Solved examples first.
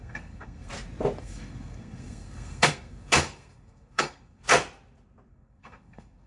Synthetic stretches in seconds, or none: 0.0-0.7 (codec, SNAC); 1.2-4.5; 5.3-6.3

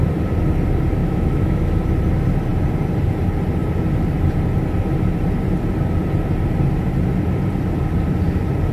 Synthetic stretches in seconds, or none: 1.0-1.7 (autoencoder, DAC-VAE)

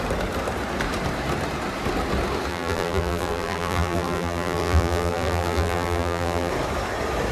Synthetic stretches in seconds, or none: 2.5-6.5 (vocoder, BigVGAN v2)

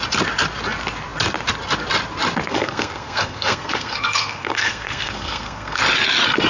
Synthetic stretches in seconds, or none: 2.5-5.8 (codec, SNAC)

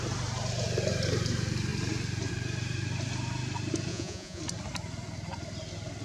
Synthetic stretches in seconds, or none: 3.9-4.4 (vocoder, Vocos)

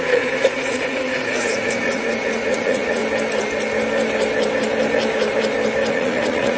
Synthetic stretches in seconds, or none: 0.0-3.0 (vocoder, Vocos); 5.9-6.6

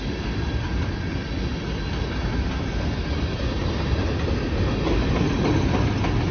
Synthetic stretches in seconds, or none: none